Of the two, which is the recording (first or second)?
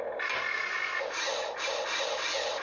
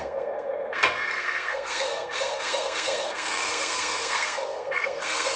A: first